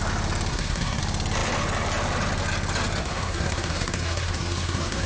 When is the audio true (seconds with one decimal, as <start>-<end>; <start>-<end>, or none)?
0.0-0.5; 1.0-3.0